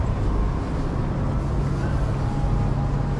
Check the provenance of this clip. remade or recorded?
recorded